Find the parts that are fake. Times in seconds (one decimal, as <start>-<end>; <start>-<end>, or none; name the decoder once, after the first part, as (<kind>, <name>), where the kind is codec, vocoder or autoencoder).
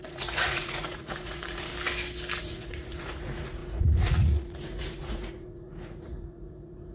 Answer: 0.0-1.7 (vocoder, Vocos); 2.4-6.9